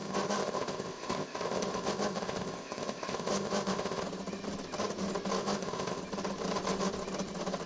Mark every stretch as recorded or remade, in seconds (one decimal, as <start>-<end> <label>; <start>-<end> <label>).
0.0-4.0 remade; 4.0-5.4 recorded; 5.4-6.0 remade; 6.0-7.7 recorded

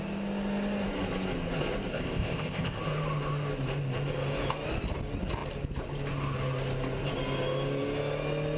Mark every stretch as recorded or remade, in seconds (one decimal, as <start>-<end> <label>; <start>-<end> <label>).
0.0-1.9 recorded; 1.9-2.8 remade; 2.8-8.6 recorded